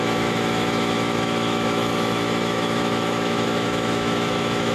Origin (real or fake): fake